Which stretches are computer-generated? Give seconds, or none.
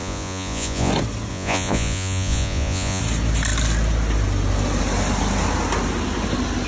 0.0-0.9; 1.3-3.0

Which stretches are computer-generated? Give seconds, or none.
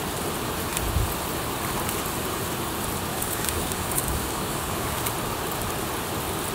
3.1-5.0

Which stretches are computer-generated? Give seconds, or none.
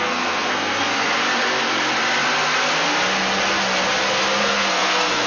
0.0-1.2; 4.4-5.3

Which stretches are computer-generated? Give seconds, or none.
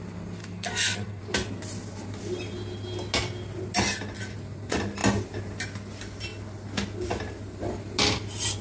0.4-1.2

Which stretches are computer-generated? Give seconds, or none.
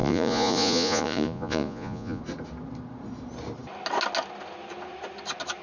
0.0-2.2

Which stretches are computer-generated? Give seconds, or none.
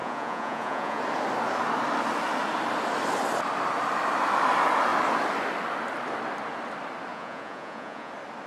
0.0-1.0; 7.1-8.1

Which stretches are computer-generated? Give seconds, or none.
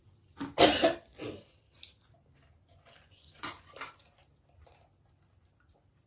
2.6-3.7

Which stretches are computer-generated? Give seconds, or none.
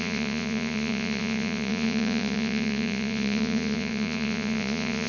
0.0-5.1